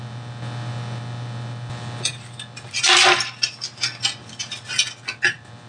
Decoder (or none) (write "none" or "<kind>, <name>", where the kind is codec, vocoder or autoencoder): none